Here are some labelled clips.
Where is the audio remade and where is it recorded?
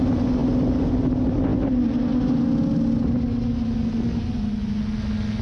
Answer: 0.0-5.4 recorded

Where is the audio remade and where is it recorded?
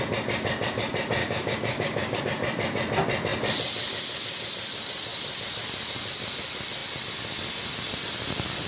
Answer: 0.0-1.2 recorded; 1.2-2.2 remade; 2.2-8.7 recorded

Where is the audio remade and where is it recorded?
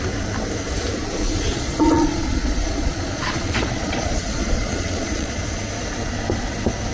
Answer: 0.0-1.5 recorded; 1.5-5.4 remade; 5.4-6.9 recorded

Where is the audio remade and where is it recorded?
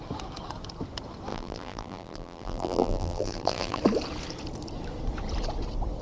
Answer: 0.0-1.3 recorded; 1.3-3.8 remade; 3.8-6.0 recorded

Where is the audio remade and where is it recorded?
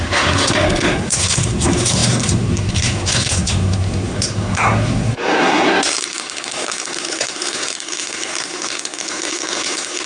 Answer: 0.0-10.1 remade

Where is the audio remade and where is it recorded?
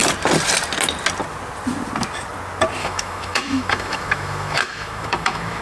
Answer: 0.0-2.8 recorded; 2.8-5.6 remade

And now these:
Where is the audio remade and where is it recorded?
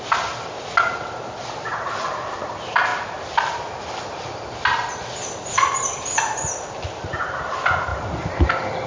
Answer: 0.0-8.9 recorded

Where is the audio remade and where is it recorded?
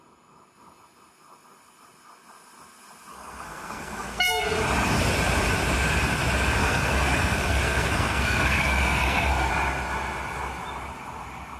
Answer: 0.0-3.1 recorded; 3.1-4.4 remade; 4.4-6.6 recorded; 6.6-9.5 remade; 9.5-11.6 recorded